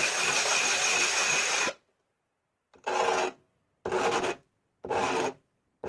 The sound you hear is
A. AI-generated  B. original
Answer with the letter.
B